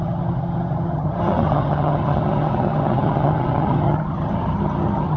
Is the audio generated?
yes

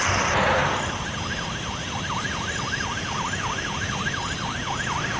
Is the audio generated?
no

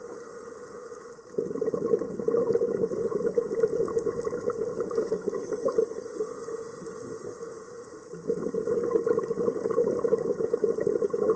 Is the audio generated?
no